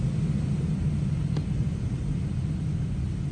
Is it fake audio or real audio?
real